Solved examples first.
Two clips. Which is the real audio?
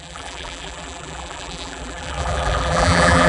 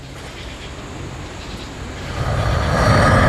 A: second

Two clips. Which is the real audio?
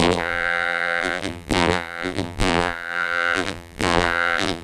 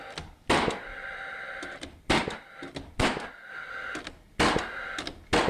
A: second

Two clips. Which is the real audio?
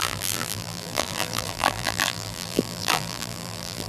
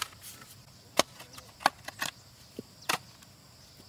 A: second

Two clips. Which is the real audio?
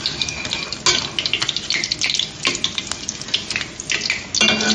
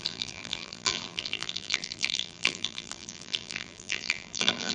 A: first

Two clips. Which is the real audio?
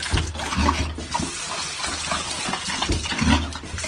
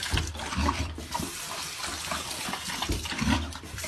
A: first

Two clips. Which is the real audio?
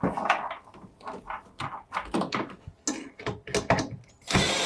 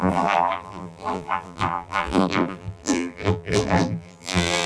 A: first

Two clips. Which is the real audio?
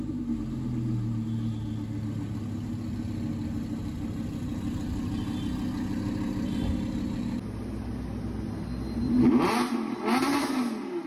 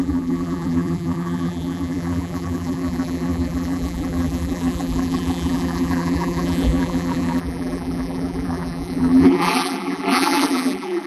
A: first